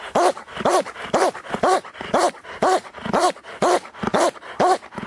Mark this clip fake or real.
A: real